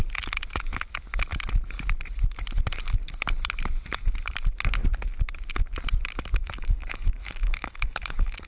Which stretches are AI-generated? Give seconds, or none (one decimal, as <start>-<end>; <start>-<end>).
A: 6.4-8.5